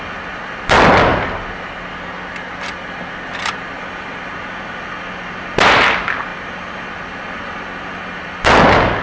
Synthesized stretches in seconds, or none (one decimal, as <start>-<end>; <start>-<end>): none